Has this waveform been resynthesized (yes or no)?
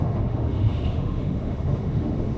yes